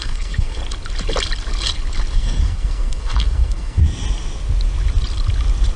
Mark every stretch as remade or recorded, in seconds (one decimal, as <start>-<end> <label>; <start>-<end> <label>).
0.0-0.6 remade; 0.6-2.1 recorded; 2.1-3.8 remade; 3.8-5.8 recorded